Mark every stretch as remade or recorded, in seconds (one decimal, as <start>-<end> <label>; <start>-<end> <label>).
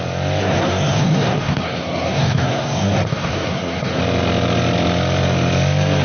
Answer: 0.0-0.4 recorded; 0.4-4.0 remade; 4.0-6.0 recorded